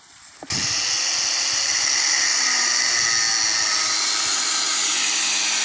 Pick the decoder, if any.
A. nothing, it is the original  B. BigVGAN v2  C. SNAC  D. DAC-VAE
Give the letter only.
A